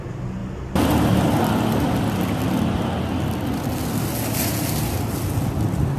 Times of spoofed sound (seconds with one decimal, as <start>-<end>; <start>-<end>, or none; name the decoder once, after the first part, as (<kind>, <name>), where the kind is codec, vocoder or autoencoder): none

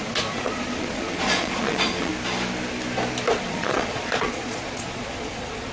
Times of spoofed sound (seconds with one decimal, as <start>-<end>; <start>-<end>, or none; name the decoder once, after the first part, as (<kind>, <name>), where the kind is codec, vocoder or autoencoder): 0.0-2.1 (vocoder, Vocos); 3.4-5.7

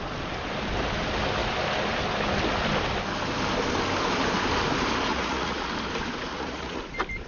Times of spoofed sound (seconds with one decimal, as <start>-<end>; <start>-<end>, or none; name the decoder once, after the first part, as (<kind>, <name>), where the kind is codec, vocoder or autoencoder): 5.1-5.7 (vocoder, Vocos); 6.3-6.8

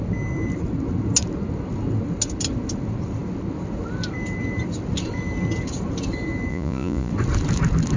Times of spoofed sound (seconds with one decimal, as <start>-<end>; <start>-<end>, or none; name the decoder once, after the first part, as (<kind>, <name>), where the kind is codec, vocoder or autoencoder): 6.5-7.1 (vocoder, Vocos)

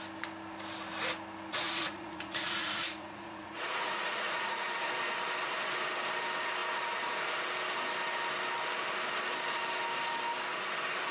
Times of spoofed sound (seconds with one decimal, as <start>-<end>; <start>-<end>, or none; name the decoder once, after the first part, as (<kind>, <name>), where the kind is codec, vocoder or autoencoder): 1.5-4.9 (vocoder, Vocos)

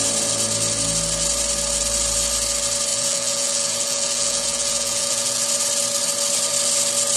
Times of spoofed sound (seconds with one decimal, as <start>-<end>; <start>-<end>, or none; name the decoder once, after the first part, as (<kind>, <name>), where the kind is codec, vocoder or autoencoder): 2.9-5.4 (vocoder, Vocos)

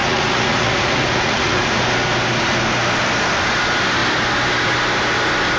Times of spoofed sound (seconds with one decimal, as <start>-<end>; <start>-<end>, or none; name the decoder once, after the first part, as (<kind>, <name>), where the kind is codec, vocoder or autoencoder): 0.0-1.8 (vocoder, Vocos)

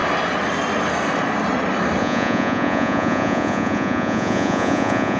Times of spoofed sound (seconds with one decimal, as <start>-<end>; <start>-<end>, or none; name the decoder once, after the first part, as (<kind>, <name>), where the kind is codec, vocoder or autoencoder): 2.0-5.2 (vocoder, Vocos)